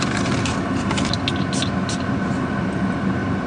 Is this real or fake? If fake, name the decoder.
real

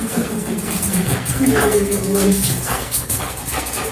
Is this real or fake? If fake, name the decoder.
fake, codec, SNAC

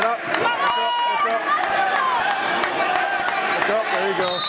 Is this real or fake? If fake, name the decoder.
real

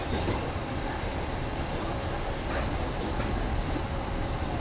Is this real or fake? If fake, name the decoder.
real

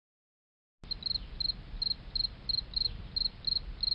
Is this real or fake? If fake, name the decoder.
real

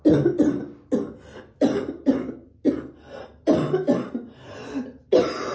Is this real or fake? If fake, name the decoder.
real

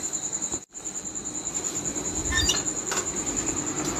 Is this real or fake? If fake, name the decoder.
real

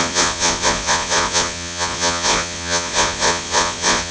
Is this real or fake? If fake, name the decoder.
fake, vocoder, Vocos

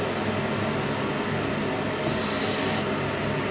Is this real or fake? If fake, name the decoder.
real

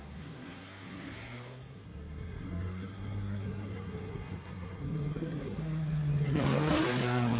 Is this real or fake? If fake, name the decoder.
fake, codec, SNAC